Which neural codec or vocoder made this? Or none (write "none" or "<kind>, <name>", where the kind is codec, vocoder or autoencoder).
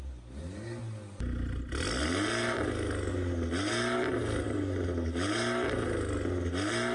none